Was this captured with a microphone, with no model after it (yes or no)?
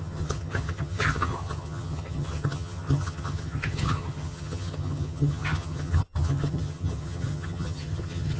no